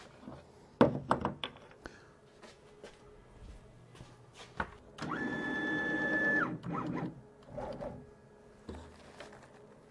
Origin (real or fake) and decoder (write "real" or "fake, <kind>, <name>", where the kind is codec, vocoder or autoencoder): real